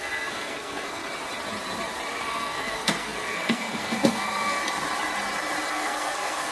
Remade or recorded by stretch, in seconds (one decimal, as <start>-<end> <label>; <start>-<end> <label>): 0.0-1.0 remade; 1.0-2.1 recorded; 2.1-4.6 remade; 4.6-5.7 recorded; 5.7-6.5 remade